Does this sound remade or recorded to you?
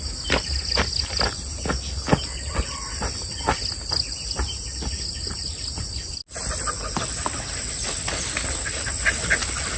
recorded